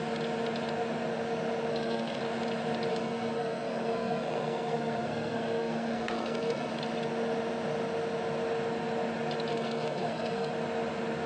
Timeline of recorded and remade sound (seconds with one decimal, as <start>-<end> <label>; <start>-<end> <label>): 0.0-1.7 recorded; 1.7-2.2 remade; 2.2-2.9 recorded; 2.9-6.7 remade; 6.7-9.5 recorded; 9.5-10.5 remade; 10.5-11.3 recorded